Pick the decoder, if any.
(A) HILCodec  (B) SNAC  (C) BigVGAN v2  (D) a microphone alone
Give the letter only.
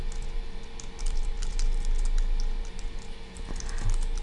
D